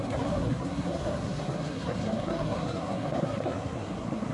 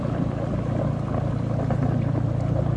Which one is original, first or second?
second